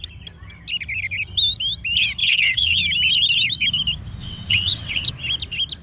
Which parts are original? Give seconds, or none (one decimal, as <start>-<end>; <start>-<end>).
0.0-2.2; 2.8-4.2; 5.1-5.8